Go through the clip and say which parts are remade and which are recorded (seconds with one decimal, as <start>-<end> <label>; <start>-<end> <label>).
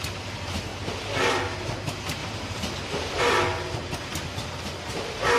0.0-2.2 recorded; 2.2-3.2 remade; 3.2-5.4 recorded